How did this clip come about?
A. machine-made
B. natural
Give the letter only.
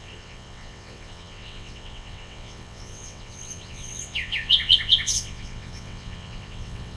A